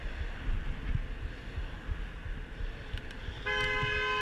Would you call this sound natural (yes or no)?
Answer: yes